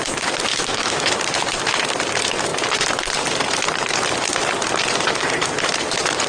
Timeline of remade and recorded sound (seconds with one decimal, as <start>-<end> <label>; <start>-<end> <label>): 0.0-0.5 recorded; 0.5-1.1 remade; 1.1-6.3 recorded